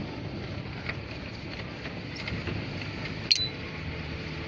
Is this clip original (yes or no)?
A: yes